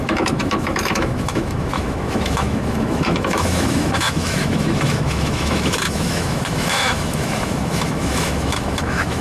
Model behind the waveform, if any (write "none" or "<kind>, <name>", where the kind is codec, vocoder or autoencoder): autoencoder, DAC-VAE